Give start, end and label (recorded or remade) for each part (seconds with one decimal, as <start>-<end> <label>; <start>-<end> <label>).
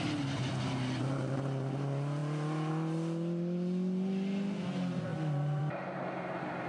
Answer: 0.0-6.7 recorded